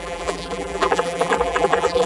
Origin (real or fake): fake